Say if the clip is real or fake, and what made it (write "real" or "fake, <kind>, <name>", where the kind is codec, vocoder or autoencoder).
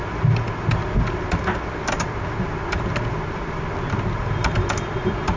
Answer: real